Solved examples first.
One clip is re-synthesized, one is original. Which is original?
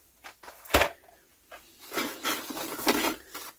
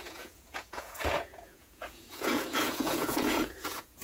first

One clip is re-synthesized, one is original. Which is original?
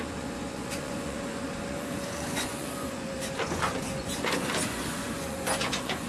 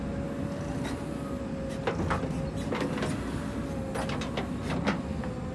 second